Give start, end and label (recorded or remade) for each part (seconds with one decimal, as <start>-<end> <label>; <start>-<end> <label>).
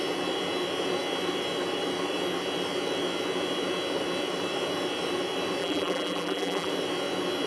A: 0.0-5.6 recorded; 5.6-6.7 remade; 6.7-7.5 recorded